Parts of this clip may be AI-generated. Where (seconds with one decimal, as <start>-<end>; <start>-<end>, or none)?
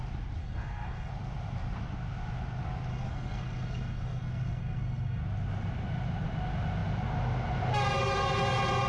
0.4-1.1; 2.9-5.2